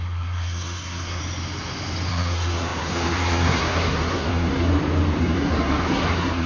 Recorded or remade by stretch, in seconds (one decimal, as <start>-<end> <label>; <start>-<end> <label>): 0.0-1.2 remade; 1.2-2.1 recorded; 2.1-4.7 remade; 4.7-5.2 recorded; 5.2-6.5 remade

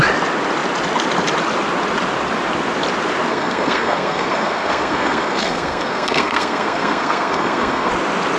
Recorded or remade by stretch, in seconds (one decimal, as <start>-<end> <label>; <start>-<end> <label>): 0.0-3.3 recorded; 3.3-7.9 remade; 7.9-8.4 recorded

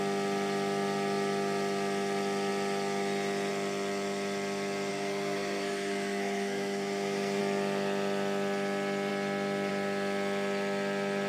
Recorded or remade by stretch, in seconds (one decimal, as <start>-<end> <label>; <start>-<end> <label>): 0.0-4.9 recorded; 4.9-7.4 remade; 7.4-11.3 recorded

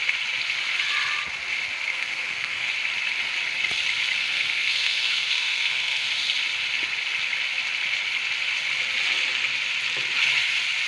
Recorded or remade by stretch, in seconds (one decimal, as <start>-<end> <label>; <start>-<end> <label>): 0.0-1.9 recorded; 1.9-2.7 remade; 2.7-4.2 recorded; 4.2-6.1 remade; 6.1-10.9 recorded

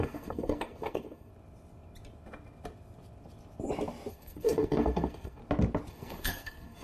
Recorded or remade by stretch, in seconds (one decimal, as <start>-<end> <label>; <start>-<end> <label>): 0.0-1.3 remade; 1.3-4.1 recorded; 4.1-5.4 remade; 5.4-5.9 recorded; 5.9-6.8 remade

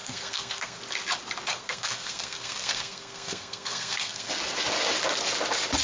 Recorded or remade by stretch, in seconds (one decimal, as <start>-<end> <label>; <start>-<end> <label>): 0.0-0.8 remade; 0.8-1.5 recorded; 1.5-4.3 remade; 4.3-5.8 recorded

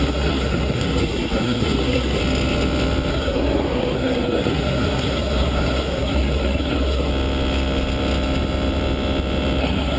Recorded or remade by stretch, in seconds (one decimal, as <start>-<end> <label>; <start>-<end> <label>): 0.0-2.2 remade; 2.2-3.1 recorded; 3.1-7.1 remade; 7.1-9.6 recorded; 9.6-10.0 remade